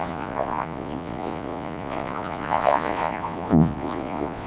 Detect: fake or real fake